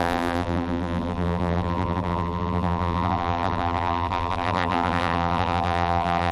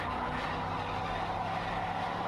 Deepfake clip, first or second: first